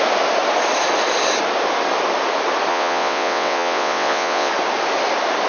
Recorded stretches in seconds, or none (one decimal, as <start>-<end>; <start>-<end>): 0.0-2.7; 4.5-5.5